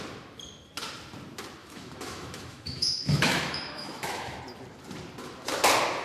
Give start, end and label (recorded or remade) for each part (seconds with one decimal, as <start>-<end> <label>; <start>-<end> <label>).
0.0-1.6 recorded; 1.6-4.4 remade; 4.4-6.0 recorded

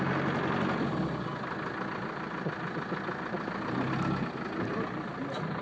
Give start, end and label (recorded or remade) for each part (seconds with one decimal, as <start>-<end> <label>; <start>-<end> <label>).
0.0-5.6 recorded

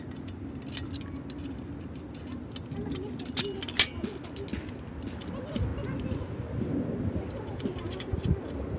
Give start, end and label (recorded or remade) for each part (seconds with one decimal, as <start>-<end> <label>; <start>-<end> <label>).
0.0-8.8 recorded

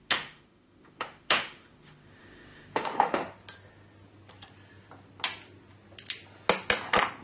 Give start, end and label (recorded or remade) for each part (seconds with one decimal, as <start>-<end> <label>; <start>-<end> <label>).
0.0-3.2 remade; 3.2-7.2 recorded

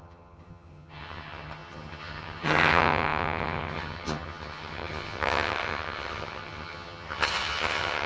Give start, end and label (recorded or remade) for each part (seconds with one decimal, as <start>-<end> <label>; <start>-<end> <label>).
0.0-8.1 remade

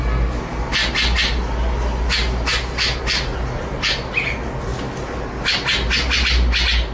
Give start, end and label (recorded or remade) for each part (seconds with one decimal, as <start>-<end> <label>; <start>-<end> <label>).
0.0-6.9 recorded